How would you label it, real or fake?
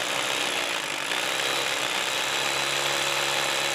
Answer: real